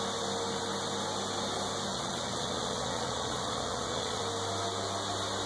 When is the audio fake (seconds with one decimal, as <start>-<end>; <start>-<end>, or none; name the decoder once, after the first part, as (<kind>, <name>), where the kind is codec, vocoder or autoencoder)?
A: 1.9-4.2 (vocoder, Vocos)